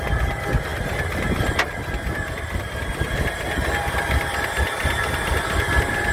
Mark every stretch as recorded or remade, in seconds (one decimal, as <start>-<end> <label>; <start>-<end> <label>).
0.0-6.1 recorded